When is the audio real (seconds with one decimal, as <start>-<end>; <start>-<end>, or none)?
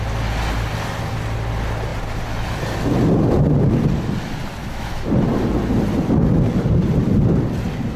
0.0-4.6; 5.1-8.0